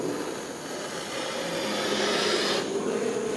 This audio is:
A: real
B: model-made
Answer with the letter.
A